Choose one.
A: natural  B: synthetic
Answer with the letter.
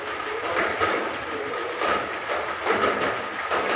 A